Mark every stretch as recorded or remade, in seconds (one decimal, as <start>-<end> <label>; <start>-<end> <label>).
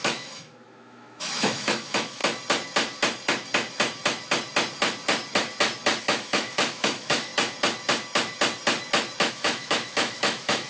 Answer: 0.0-2.2 remade; 2.2-6.0 recorded; 6.0-7.3 remade; 7.3-9.3 recorded; 9.3-10.7 remade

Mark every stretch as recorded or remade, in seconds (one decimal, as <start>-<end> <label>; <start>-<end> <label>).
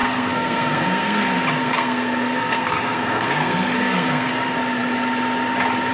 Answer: 0.0-1.2 remade; 1.2-1.6 recorded; 1.6-4.3 remade; 4.3-5.9 recorded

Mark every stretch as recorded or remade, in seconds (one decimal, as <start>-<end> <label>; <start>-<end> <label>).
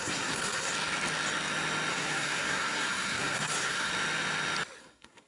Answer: 0.0-0.7 remade; 0.7-1.9 recorded; 1.9-3.9 remade; 3.9-4.8 recorded; 4.8-5.3 remade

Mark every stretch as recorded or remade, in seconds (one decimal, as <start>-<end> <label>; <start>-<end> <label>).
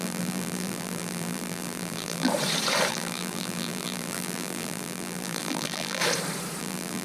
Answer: 0.0-2.3 remade; 2.3-2.9 recorded; 2.9-6.0 remade; 6.0-6.6 recorded; 6.6-7.0 remade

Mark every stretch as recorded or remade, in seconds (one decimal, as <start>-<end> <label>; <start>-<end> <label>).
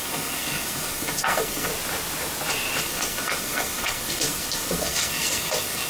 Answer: 0.0-1.7 remade; 1.7-2.8 recorded; 2.8-5.9 remade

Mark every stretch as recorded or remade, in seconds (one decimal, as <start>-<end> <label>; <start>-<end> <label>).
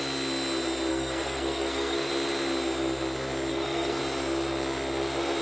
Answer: 0.0-0.9 recorded; 0.9-2.1 remade; 2.1-3.5 recorded; 3.5-4.0 remade; 4.0-5.4 recorded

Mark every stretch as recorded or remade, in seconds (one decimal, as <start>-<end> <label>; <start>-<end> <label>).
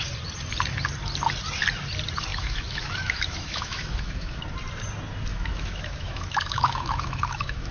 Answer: 0.0-2.3 recorded; 2.3-4.4 remade; 4.4-5.3 recorded; 5.3-7.7 remade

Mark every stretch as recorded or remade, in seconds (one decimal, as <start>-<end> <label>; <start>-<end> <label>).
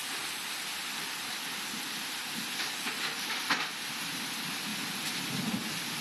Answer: 0.0-6.0 recorded